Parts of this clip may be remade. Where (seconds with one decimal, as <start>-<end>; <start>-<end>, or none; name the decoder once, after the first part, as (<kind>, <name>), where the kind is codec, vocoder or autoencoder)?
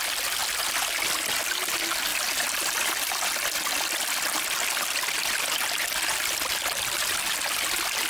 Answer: 0.4-0.9 (vocoder, BigVGAN v2); 2.1-5.5; 6.1-7.1